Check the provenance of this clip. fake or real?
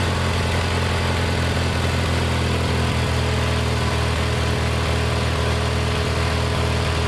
real